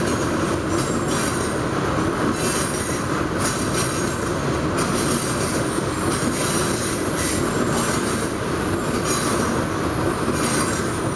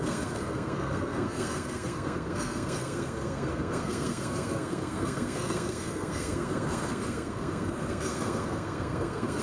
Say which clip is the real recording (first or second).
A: first